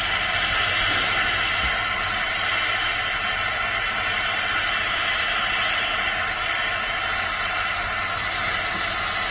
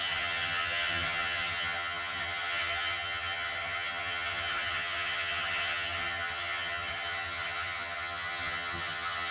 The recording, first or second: first